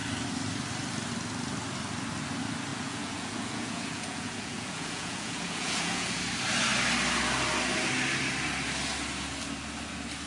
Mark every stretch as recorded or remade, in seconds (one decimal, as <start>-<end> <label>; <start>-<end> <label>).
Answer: 0.0-2.7 recorded; 2.7-6.2 remade; 6.2-10.3 recorded